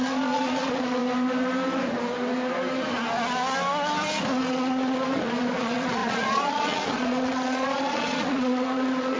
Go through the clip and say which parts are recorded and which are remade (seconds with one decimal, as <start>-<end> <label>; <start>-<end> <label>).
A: 0.0-1.0 remade; 1.0-4.5 recorded; 4.5-9.2 remade